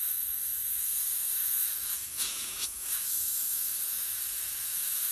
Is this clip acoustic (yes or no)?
no